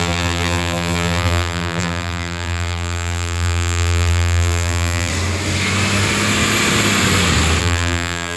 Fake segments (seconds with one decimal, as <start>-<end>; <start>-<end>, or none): 0.0-5.1; 7.6-8.4